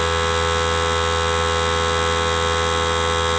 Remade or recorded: recorded